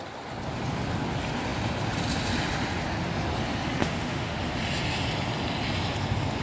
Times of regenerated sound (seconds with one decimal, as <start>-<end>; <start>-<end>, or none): 3.8-4.4